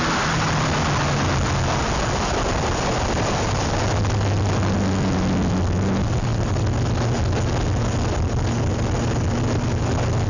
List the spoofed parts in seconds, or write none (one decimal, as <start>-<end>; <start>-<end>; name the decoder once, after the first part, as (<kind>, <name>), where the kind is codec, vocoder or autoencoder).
none